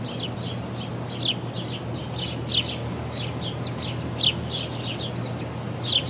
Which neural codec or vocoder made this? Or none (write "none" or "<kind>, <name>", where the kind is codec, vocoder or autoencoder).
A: none